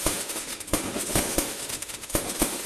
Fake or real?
fake